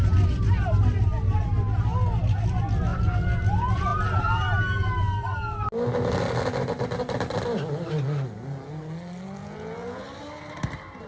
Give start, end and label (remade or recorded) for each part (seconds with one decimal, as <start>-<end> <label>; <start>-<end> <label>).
0.0-9.4 recorded; 9.4-10.0 remade; 10.0-11.1 recorded